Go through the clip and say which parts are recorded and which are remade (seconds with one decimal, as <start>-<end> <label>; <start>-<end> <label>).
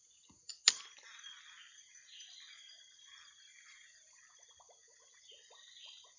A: 0.0-0.5 remade; 0.5-3.5 recorded; 3.5-4.2 remade; 4.2-6.2 recorded